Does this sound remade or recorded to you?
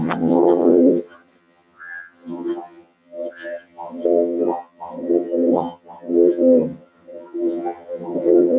remade